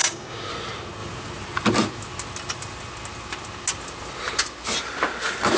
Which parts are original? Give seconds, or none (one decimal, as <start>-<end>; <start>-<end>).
0.5-5.6